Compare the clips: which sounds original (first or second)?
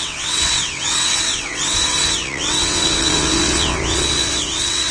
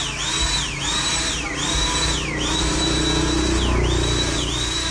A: second